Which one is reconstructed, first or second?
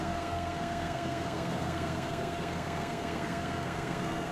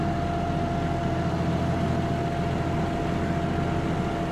first